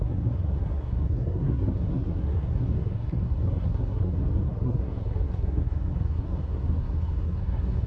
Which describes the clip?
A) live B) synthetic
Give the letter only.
B